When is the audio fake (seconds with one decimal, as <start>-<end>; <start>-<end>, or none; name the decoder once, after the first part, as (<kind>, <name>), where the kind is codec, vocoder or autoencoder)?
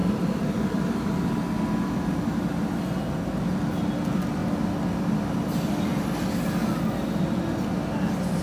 0.0-1.2 (vocoder, BigVGAN v2); 4.4-5.0